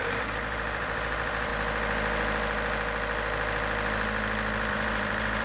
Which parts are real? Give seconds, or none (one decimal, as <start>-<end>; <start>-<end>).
1.5-4.7